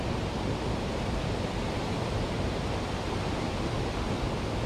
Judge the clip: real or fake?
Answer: real